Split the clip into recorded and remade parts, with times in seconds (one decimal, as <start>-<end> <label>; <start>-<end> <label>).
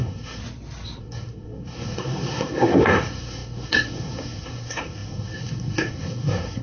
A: 0.0-0.4 remade; 0.4-1.0 recorded; 1.0-6.6 remade